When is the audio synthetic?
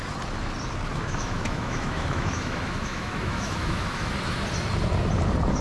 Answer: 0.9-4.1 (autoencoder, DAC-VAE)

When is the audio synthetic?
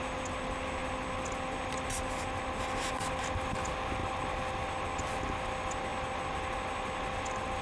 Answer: none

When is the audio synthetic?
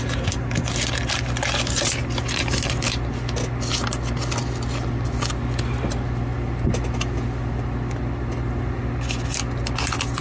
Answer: none